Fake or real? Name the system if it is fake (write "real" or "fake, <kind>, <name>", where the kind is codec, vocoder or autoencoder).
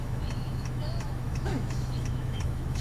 fake, autoencoder, DAC-VAE